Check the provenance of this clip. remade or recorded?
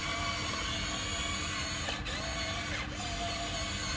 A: recorded